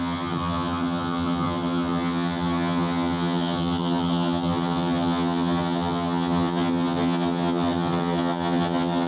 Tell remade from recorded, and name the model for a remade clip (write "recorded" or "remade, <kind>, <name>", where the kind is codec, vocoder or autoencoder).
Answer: remade, vocoder, HiFi-GAN